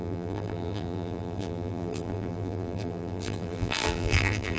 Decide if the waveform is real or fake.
fake